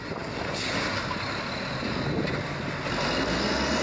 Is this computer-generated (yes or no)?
no